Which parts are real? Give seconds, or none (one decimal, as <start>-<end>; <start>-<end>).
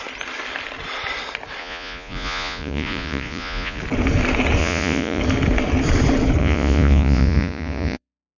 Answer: 0.0-1.6; 3.8-4.6; 5.2-6.4